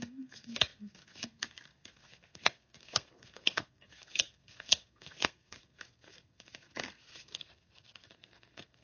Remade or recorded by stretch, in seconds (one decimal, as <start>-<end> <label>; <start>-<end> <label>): 0.0-8.8 remade